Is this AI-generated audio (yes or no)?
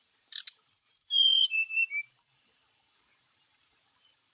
yes